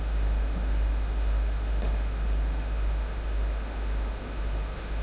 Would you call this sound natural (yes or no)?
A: no